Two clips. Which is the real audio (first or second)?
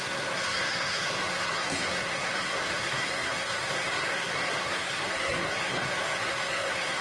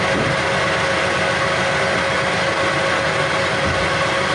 second